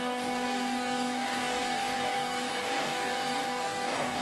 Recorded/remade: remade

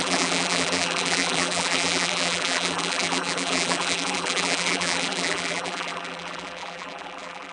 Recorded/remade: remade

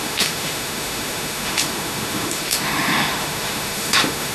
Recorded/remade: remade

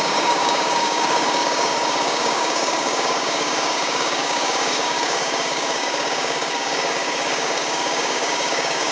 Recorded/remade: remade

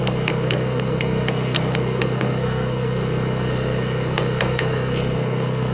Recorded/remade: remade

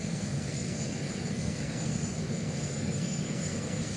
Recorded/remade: remade